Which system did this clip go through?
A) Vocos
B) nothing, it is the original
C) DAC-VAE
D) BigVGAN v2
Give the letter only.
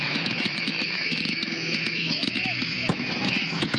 C